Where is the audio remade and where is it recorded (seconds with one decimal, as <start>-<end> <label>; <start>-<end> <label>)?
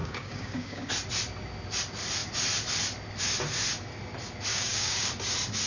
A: 0.0-0.9 remade; 0.9-4.5 recorded; 4.5-5.1 remade; 5.1-5.7 recorded